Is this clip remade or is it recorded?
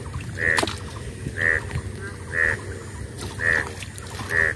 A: recorded